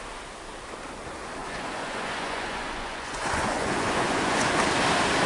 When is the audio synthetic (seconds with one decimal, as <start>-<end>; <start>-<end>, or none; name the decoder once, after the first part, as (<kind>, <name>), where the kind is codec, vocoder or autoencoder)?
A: 1.4-4.6 (vocoder, Vocos)